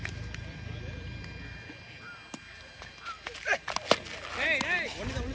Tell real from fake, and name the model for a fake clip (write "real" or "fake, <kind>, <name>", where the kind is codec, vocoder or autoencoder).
real